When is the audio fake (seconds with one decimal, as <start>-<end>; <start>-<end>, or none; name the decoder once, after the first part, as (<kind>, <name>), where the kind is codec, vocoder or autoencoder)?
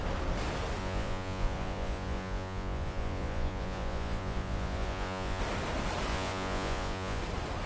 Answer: 0.8-5.4 (vocoder, Vocos); 6.1-7.2